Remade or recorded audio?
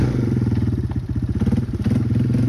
recorded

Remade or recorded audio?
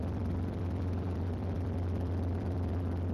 remade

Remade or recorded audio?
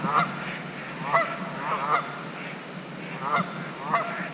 recorded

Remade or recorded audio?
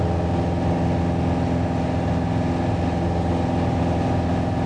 recorded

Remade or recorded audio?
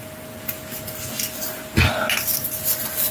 recorded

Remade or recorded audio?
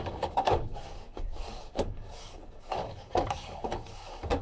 remade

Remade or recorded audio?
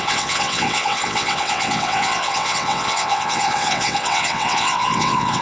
remade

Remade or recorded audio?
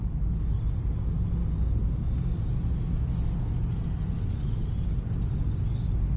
recorded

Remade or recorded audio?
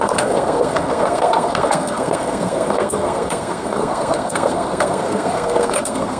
remade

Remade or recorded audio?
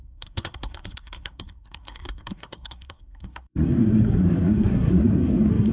remade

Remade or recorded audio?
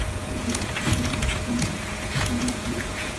remade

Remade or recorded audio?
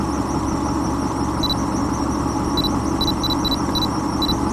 recorded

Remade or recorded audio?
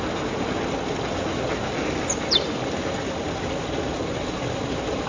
recorded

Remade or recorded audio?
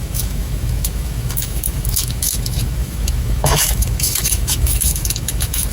remade